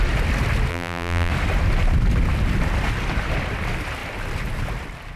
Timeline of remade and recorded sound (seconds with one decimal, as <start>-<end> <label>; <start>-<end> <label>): 0.0-0.7 recorded; 0.7-1.3 remade; 1.3-5.2 recorded